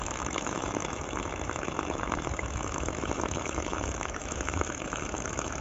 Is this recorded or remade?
remade